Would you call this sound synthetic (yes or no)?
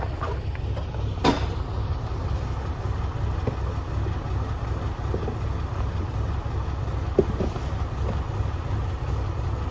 no